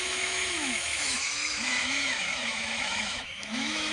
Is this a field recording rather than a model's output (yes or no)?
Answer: no